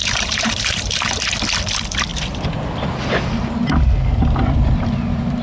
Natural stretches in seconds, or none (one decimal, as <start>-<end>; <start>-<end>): 1.2-2.1; 2.6-5.4

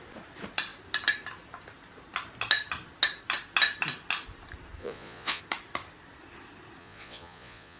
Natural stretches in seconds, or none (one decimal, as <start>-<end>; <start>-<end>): 0.0-4.8; 5.4-6.8

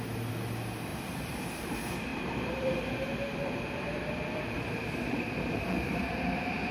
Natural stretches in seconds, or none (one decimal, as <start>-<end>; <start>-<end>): 0.0-0.9; 1.7-2.1; 6.1-6.7

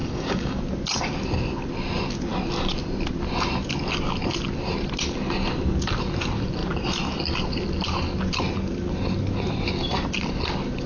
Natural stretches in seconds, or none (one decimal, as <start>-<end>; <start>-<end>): 0.6-10.9

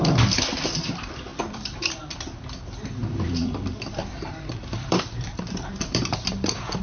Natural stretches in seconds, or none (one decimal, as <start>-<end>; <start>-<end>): 0.0-1.3; 1.8-3.0

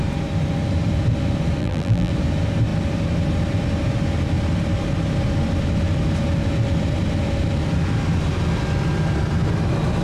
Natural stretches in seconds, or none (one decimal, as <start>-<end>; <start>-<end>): 0.0-1.6; 2.1-10.0